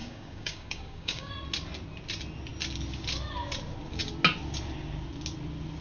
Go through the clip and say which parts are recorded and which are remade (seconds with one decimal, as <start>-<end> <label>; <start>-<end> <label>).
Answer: 0.0-1.3 remade; 1.3-5.8 recorded